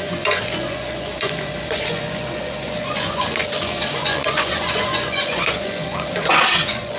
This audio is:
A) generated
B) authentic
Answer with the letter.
A